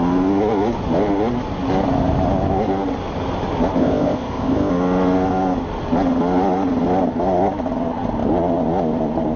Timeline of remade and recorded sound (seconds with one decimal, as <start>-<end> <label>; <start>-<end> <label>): 0.0-3.8 recorded; 3.8-4.7 remade; 4.7-9.4 recorded